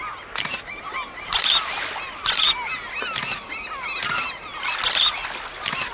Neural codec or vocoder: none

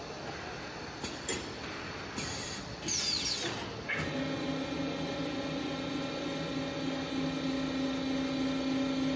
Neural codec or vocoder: none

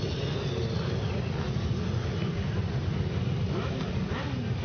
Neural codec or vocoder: none